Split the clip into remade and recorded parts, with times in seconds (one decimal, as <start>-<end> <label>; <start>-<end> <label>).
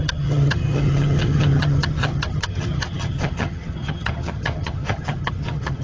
0.0-5.8 remade